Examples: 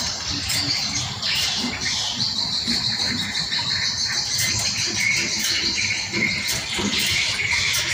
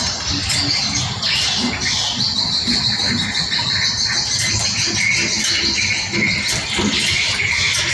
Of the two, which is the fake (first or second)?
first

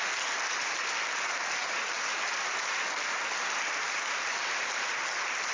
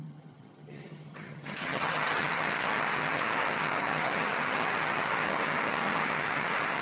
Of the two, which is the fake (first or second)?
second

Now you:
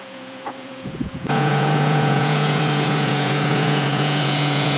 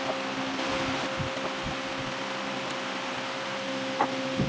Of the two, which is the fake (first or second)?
first